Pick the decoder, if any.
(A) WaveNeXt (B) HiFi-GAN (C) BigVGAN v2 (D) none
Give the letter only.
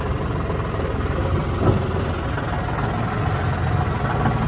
D